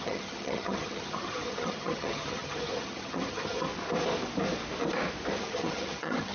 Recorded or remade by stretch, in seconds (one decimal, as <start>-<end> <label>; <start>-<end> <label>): 0.0-3.7 remade; 3.7-5.4 recorded; 5.4-6.3 remade

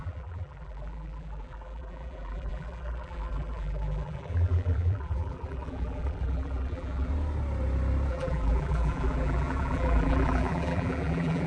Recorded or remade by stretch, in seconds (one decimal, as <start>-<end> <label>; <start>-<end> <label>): 0.0-7.1 remade; 7.1-8.1 recorded; 8.1-11.5 remade

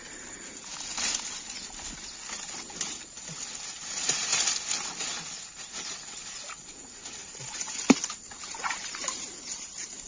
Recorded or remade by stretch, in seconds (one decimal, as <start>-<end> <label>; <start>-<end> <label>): 0.0-0.7 remade; 0.7-3.7 recorded; 3.7-4.3 remade; 4.3-5.7 recorded; 5.7-10.1 remade

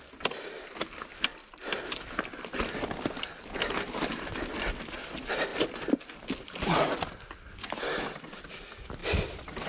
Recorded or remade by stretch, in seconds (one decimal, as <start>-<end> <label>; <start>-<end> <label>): 0.0-9.7 recorded

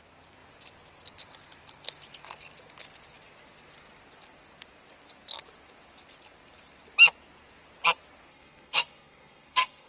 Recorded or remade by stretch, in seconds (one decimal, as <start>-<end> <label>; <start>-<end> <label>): 0.0-8.3 recorded; 8.3-9.9 remade

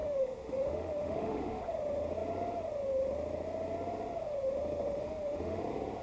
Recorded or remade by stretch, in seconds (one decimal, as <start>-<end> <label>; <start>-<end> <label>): 0.0-1.6 remade; 1.6-4.9 recorded; 4.9-5.6 remade; 5.6-6.0 recorded